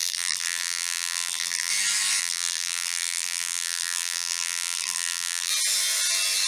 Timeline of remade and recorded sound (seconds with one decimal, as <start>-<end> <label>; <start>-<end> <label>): 0.0-1.7 remade; 1.7-2.2 recorded; 2.2-5.5 remade; 5.5-6.5 recorded